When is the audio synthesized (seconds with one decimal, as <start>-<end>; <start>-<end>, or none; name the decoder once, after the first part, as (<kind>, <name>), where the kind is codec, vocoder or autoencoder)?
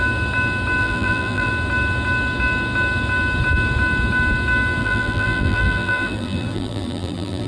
0.8-1.5 (vocoder, BigVGAN v2); 4.8-7.5